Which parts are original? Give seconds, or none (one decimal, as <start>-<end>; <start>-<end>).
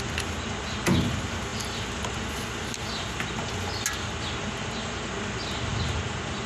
0.0-6.5